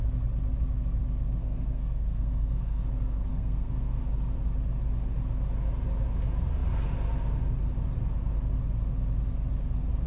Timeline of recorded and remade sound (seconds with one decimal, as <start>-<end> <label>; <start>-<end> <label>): 0.0-1.4 recorded; 1.4-2.8 remade; 2.8-3.3 recorded; 3.3-4.0 remade; 4.0-10.1 recorded

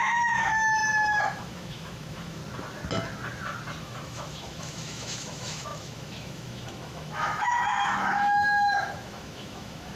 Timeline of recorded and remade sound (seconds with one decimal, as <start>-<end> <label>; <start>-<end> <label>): 0.0-2.4 remade; 2.4-3.8 recorded; 3.8-10.0 remade

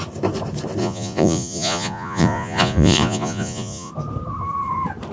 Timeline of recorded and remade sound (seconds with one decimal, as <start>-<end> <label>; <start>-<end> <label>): 0.0-0.8 recorded; 0.8-3.9 remade; 3.9-5.1 recorded

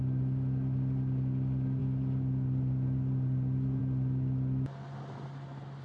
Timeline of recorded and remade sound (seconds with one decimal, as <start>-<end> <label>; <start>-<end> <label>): 0.0-5.8 recorded